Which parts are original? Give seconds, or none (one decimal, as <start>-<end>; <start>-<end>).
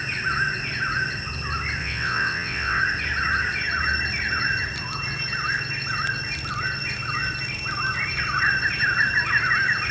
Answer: 0.0-1.8; 2.8-9.9